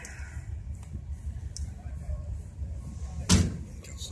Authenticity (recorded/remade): recorded